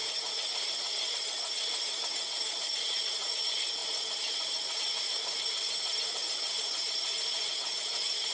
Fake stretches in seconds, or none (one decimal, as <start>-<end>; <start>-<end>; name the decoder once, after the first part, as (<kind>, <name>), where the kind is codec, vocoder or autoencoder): 0.0-3.8 (vocoder, Vocos); 4.8-8.3